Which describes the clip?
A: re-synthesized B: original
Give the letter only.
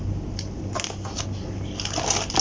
B